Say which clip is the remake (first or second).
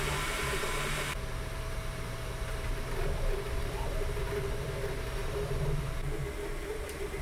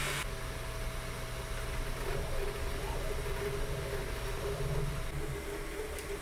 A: first